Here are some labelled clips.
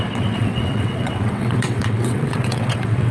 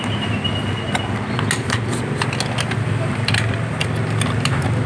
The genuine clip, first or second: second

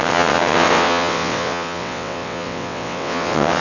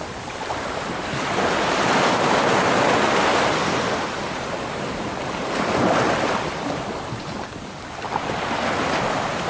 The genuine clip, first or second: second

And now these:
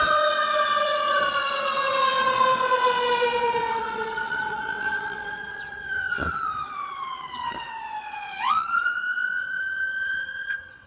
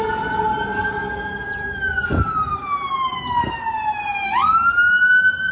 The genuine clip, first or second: second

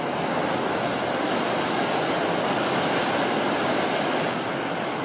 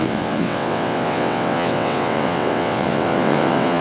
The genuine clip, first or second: first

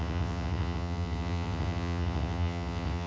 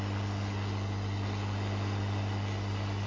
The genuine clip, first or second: second